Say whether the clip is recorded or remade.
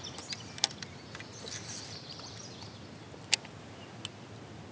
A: recorded